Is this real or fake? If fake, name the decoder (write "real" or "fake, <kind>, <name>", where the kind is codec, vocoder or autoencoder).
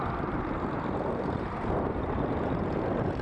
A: fake, vocoder, BigVGAN v2